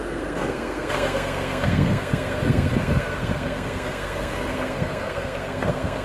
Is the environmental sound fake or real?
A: fake